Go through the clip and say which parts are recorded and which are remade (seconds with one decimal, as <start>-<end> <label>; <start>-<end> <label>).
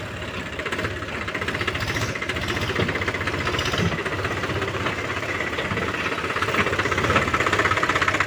0.0-8.3 recorded